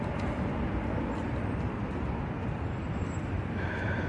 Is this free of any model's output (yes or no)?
yes